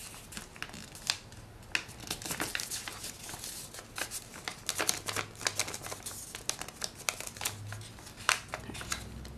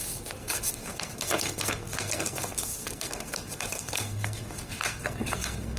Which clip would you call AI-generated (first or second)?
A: second